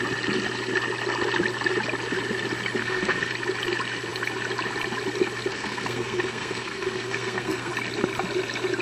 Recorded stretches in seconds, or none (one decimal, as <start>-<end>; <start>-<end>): 0.0-2.8; 3.3-5.5; 7.7-8.8

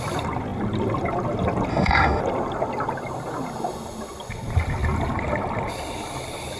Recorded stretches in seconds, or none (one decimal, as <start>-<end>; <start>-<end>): 0.0-1.7; 2.2-6.6

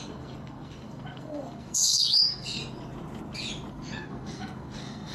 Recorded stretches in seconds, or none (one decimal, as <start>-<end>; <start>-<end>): 2.6-3.7

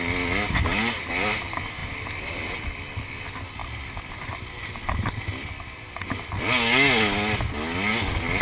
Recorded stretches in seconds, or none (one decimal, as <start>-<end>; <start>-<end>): 0.0-8.4

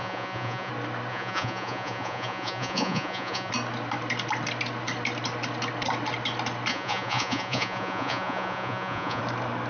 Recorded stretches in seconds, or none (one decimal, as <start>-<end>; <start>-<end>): 0.7-1.1; 3.5-6.7; 9.2-9.7

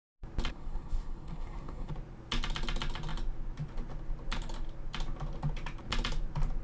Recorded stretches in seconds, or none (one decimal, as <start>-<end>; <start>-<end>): 0.0-0.5; 1.9-6.6

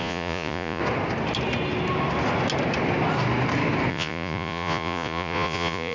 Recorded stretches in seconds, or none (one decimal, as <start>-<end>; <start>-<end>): 0.8-3.9